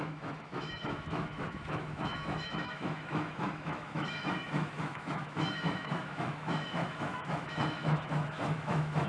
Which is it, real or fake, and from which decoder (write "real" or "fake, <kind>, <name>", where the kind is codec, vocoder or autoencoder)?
fake, autoencoder, DAC-VAE